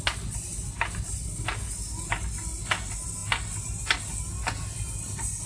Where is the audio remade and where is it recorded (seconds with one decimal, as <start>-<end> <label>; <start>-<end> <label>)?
0.0-5.5 recorded